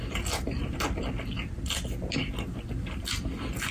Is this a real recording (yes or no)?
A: yes